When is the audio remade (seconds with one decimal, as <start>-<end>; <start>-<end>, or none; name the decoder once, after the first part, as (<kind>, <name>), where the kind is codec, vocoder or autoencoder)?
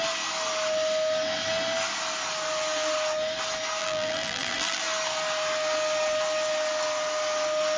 3.8-4.8 (vocoder, BigVGAN v2)